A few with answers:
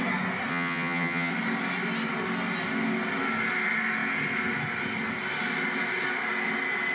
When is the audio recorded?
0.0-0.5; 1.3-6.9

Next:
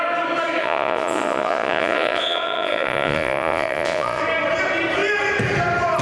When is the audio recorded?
0.0-0.6; 4.2-6.0